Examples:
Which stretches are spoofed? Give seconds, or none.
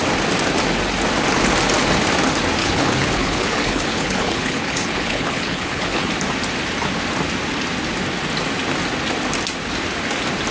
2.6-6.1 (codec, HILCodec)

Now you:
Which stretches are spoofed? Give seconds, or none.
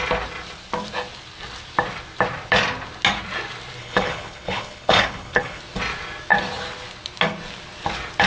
3.8-5.6 (codec, HILCodec)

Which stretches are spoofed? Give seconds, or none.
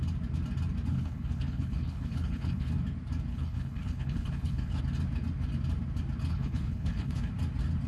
0.9-2.7 (codec, HILCodec); 3.3-4.8; 6.3-7.3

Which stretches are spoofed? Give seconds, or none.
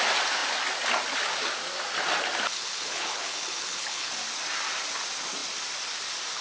2.5-4.1 (codec, HILCodec)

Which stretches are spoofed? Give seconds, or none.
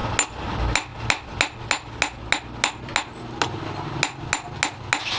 none